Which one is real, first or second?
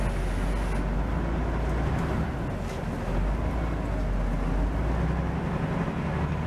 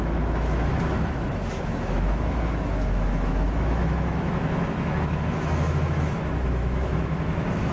first